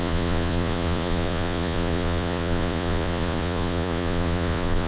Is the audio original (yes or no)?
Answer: no